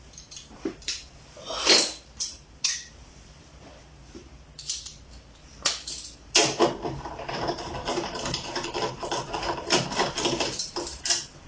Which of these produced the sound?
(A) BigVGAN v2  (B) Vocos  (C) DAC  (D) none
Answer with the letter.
A